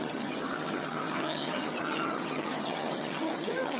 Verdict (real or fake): fake